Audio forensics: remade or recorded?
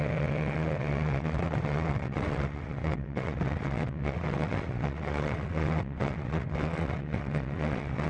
remade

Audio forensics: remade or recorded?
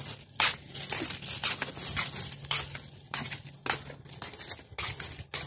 recorded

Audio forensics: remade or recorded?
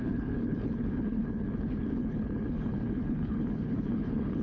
remade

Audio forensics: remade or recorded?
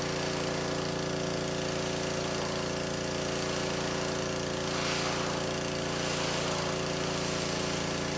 recorded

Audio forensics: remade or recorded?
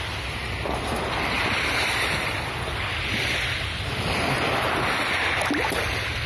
recorded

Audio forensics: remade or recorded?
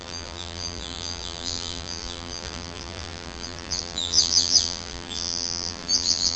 remade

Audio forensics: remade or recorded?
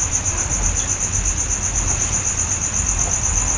recorded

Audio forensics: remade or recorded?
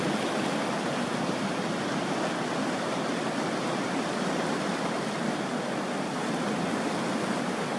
recorded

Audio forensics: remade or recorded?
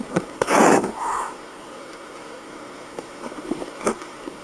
remade